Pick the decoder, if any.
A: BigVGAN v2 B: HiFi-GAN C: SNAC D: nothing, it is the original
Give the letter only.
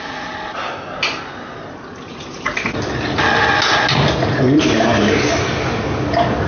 D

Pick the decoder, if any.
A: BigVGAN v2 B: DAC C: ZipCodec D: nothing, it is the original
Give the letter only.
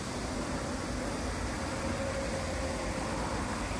D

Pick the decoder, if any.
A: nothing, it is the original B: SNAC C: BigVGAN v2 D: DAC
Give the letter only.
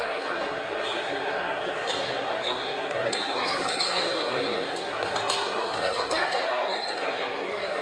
B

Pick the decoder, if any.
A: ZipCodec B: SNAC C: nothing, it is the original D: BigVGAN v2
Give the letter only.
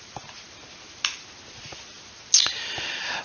C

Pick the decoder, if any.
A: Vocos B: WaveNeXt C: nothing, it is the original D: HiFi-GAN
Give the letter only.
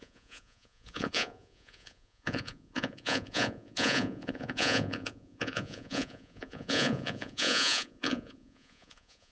A